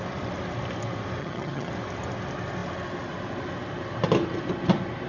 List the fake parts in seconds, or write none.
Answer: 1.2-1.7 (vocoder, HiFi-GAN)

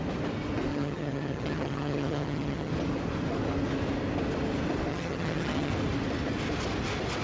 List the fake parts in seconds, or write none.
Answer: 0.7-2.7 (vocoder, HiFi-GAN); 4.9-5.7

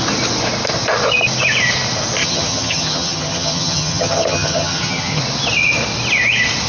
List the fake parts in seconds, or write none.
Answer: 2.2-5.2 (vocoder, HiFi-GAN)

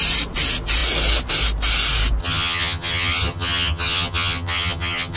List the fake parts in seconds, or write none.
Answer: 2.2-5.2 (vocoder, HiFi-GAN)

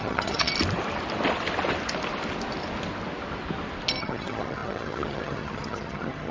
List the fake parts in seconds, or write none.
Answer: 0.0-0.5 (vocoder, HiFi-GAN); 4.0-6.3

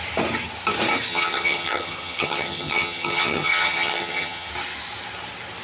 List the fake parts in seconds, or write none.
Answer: 1.1-4.5 (vocoder, HiFi-GAN)